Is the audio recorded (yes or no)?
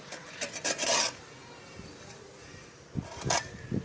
yes